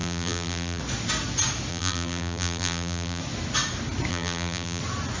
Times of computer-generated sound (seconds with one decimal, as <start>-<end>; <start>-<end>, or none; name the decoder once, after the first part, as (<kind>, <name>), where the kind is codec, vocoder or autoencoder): 0.0-0.8 (vocoder, BigVGAN v2); 1.7-3.2; 4.1-4.8